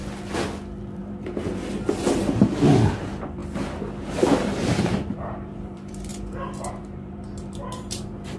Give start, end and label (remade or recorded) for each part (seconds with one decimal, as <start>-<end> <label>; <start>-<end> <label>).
0.0-2.1 recorded; 2.1-3.4 remade; 3.4-4.1 recorded; 4.1-6.1 remade; 6.1-6.7 recorded; 6.7-8.4 remade